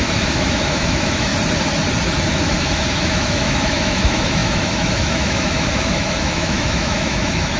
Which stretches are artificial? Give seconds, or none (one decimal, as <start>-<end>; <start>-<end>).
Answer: 0.0-1.3; 2.3-7.6